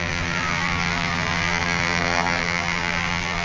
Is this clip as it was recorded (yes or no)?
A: no